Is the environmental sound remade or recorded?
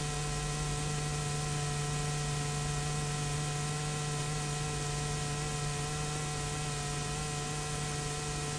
recorded